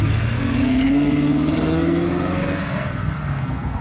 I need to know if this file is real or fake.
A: fake